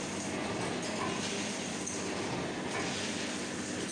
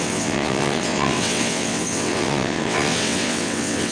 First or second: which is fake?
second